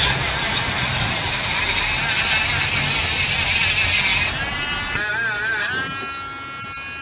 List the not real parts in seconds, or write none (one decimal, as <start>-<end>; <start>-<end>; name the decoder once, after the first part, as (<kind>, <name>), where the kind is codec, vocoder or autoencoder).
none